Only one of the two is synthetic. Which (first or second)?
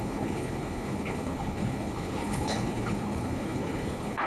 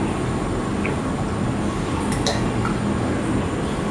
first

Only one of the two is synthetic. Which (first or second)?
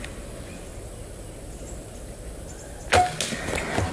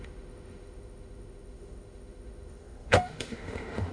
second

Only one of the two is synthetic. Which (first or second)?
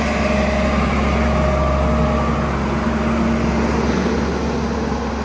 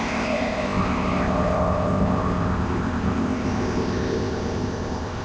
second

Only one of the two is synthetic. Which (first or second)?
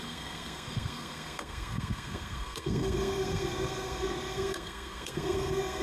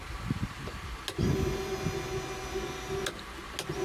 first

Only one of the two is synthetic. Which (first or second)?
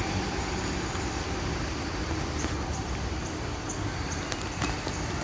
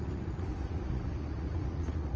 second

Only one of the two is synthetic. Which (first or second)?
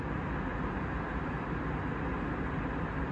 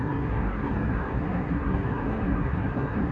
second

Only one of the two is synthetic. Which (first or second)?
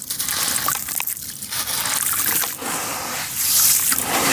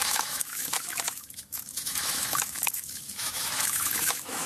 second